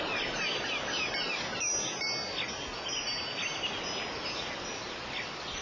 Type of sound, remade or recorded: recorded